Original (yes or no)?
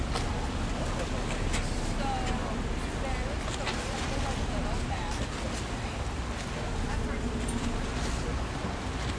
yes